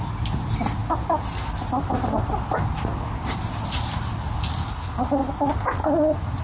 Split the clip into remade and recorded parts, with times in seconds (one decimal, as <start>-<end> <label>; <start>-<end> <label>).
0.0-6.4 recorded